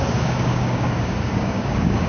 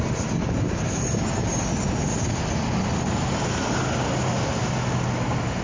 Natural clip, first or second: second